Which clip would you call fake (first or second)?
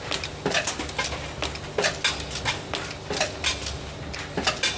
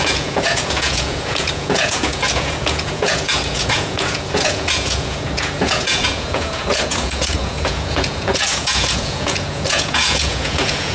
second